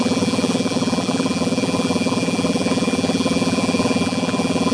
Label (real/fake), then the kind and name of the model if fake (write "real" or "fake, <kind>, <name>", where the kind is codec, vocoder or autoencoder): fake, vocoder, BigVGAN v2